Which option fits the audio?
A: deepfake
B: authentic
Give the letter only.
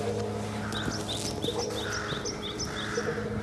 B